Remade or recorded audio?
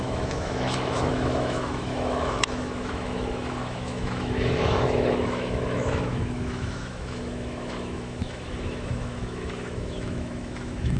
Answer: remade